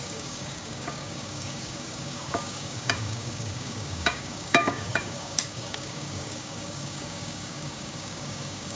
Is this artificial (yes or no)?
yes